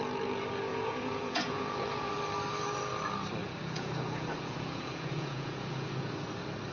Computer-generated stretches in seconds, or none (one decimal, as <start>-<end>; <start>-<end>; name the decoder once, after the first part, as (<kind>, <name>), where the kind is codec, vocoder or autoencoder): 0.7-2.1 (vocoder, Vocos); 3.4-6.1